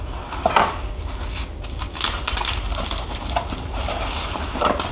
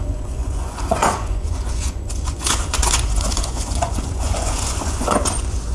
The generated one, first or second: second